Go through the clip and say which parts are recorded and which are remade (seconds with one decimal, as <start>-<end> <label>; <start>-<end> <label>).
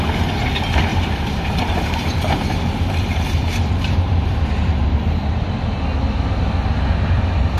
0.0-0.9 recorded; 0.9-5.5 remade; 5.5-7.6 recorded